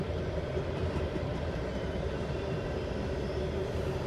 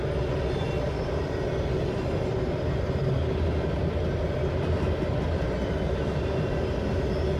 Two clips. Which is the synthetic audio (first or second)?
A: first